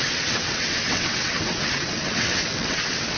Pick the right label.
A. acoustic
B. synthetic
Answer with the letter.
B